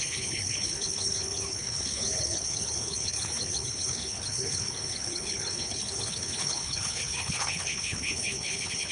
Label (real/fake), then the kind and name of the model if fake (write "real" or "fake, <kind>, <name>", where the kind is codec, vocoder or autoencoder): fake, codec, HILCodec